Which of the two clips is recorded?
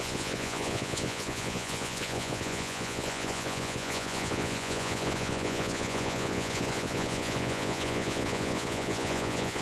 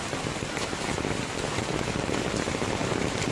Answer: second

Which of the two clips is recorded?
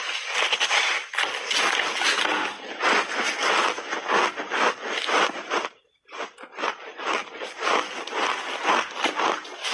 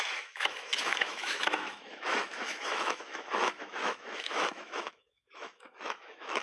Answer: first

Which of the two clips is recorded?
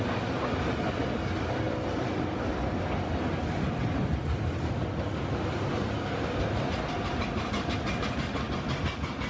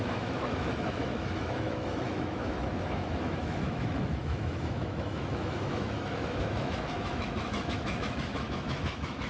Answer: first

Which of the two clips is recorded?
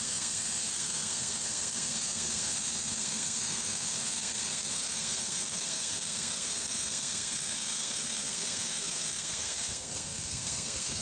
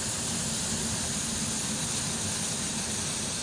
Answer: second